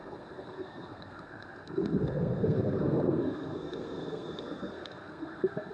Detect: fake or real fake